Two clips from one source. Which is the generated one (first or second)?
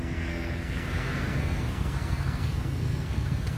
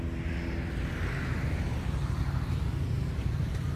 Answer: first